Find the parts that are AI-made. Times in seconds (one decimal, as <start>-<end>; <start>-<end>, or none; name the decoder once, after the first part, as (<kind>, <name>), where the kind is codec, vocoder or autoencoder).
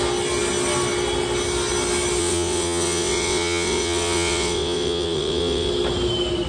2.2-5.7 (vocoder, WaveNeXt)